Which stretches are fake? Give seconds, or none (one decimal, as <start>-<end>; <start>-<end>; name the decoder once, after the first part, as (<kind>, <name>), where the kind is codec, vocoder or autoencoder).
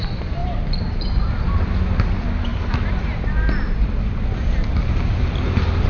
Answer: 0.0-0.4 (vocoder, BigVGAN v2); 1.3-5.9